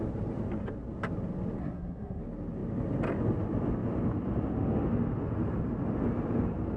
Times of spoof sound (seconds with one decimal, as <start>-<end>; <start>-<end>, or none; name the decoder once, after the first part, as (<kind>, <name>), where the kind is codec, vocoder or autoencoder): 1.6-2.2 (codec, SNAC)